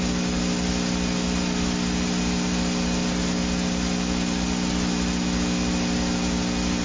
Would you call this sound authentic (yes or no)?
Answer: yes